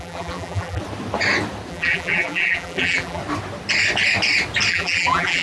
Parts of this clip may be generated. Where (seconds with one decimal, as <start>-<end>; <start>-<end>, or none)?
0.0-0.8; 1.7-3.2; 4.7-5.4